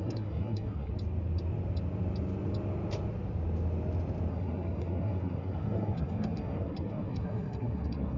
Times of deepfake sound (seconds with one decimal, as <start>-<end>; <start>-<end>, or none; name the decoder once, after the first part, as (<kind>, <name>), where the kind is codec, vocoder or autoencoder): 0.0-0.9 (codec, SNAC); 4.3-8.2